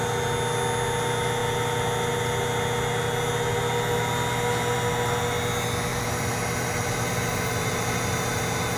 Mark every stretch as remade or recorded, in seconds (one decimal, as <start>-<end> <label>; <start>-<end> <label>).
0.0-5.9 recorded; 5.9-8.8 remade